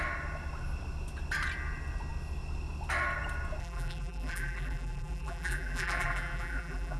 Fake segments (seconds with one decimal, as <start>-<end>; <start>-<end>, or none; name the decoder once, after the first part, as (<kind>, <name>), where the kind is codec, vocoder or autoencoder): 3.6-7.0 (vocoder, BigVGAN v2)